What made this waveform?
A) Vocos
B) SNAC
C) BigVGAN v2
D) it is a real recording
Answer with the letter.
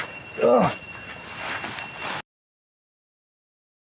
D